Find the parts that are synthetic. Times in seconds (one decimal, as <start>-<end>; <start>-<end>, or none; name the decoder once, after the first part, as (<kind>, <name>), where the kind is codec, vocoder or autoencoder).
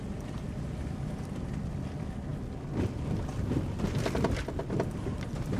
none